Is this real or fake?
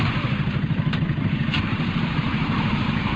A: fake